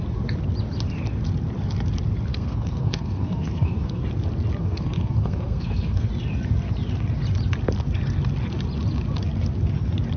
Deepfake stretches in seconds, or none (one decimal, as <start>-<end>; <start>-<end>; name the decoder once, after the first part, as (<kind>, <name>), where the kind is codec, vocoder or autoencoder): 2.3-4.0 (codec, SNAC); 4.6-6.1